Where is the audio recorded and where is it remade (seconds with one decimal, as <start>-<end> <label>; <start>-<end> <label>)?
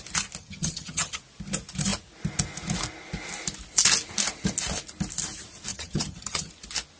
0.0-0.4 recorded; 0.4-1.2 remade; 1.2-5.7 recorded; 5.7-6.5 remade; 6.5-7.0 recorded